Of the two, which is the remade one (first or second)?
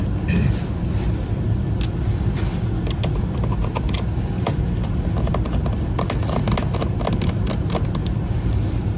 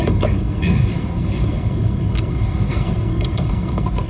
second